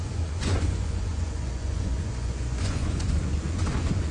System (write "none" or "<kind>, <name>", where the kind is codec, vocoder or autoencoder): vocoder, Vocos